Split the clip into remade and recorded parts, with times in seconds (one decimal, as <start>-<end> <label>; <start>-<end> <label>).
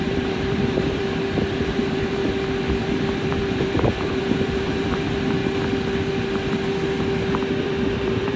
0.0-1.0 remade; 1.0-1.6 recorded; 1.6-2.2 remade; 2.2-2.8 recorded; 2.8-5.4 remade; 5.4-7.6 recorded; 7.6-8.4 remade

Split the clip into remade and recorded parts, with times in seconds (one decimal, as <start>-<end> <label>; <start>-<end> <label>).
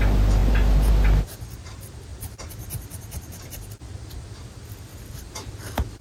0.0-2.1 recorded; 2.1-3.7 remade; 3.7-4.9 recorded; 4.9-5.5 remade; 5.5-6.0 recorded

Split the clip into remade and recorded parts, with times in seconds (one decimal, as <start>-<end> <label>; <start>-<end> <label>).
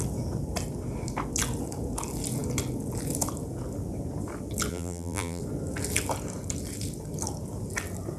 0.0-4.7 recorded; 4.7-5.4 remade; 5.4-8.2 recorded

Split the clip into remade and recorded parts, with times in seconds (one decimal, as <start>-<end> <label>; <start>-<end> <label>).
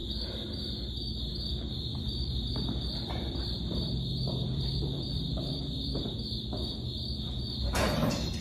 0.0-1.9 recorded; 1.9-6.0 remade; 6.0-8.4 recorded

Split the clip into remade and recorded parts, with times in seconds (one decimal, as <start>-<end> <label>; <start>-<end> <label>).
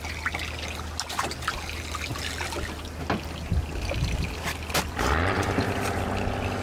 0.0-6.6 recorded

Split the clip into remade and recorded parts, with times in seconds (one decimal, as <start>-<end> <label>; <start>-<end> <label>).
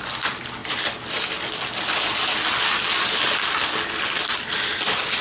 0.0-0.6 recorded; 0.6-2.1 remade; 2.1-5.2 recorded